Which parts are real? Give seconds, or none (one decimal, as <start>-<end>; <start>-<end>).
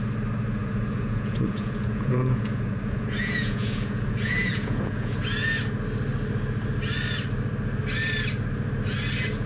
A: 0.0-0.6; 5.2-9.5